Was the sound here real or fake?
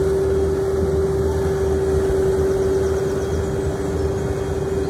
real